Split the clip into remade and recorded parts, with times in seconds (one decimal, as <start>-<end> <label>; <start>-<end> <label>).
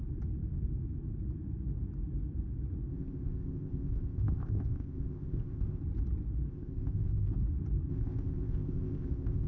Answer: 0.0-2.9 recorded; 2.9-5.8 remade; 5.8-6.5 recorded; 6.5-7.3 remade; 7.3-7.9 recorded; 7.9-9.5 remade